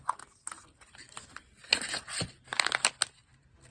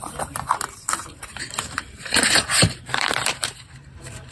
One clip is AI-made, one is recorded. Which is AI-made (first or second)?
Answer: second